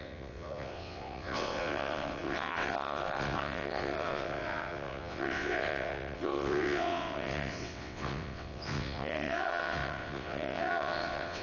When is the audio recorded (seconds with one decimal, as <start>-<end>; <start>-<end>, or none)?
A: none